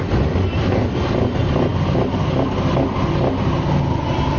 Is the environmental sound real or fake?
real